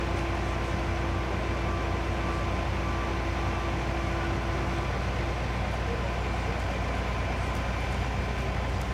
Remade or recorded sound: recorded